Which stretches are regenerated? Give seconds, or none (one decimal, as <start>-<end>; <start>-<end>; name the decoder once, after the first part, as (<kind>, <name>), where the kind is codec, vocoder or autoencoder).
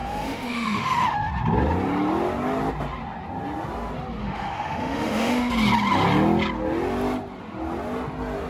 0.0-1.3 (autoencoder, DAC-VAE); 4.2-5.5